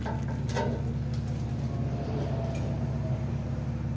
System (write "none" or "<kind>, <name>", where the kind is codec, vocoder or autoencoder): none